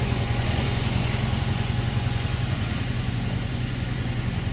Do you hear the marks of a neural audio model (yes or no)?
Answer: yes